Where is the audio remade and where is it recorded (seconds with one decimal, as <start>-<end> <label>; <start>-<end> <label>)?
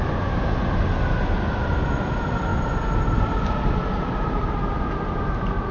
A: 0.0-5.7 recorded